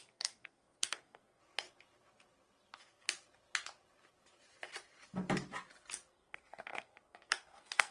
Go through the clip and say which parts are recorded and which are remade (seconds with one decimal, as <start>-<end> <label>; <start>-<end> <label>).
0.0-1.4 remade; 1.4-6.1 recorded; 6.1-7.9 remade